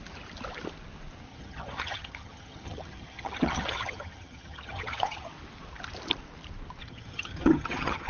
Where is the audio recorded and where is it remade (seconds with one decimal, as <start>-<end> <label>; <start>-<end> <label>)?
0.0-1.3 recorded; 1.3-5.3 remade; 5.3-6.8 recorded; 6.8-8.1 remade